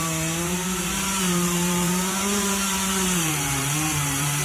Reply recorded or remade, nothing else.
remade